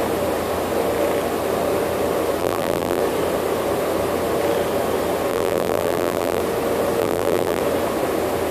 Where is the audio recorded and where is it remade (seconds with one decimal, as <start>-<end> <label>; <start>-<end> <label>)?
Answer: 0.0-2.4 recorded; 2.4-3.0 remade; 3.0-5.3 recorded; 5.3-6.4 remade; 6.4-7.0 recorded; 7.0-7.6 remade; 7.6-8.5 recorded